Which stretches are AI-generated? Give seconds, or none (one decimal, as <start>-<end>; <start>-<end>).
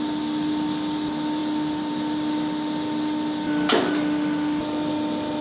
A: none